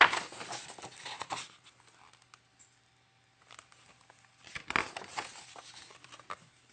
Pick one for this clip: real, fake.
real